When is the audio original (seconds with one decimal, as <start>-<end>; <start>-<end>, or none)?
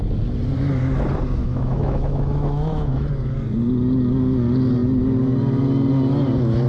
0.0-1.4; 3.1-6.7